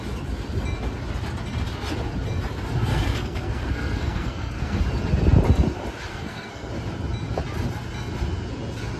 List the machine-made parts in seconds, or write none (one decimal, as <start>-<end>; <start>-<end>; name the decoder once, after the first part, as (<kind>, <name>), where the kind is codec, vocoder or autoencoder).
2.9-4.8 (codec, SNAC); 6.1-6.7